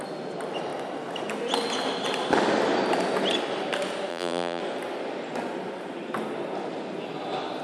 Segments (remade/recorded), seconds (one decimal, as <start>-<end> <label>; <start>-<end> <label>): 0.0-4.1 recorded; 4.1-4.6 remade; 4.6-7.6 recorded